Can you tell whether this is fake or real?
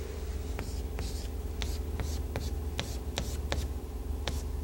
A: real